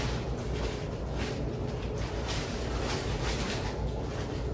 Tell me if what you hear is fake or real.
real